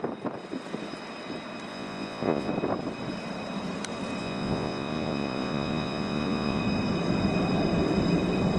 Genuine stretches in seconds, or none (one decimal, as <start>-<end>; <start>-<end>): 0.0-1.7; 2.5-4.2; 6.6-8.6